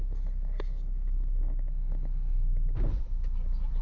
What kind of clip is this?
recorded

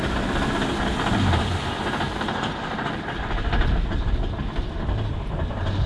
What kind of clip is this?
recorded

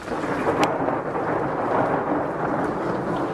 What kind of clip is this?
recorded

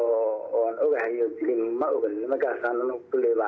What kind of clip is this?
recorded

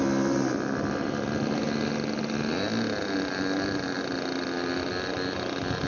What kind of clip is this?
recorded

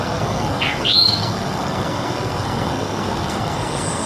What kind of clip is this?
remade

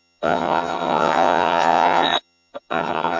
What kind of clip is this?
remade